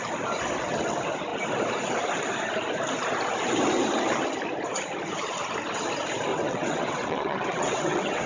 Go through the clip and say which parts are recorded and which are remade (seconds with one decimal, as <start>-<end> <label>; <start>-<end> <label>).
0.0-6.3 recorded; 6.3-8.3 remade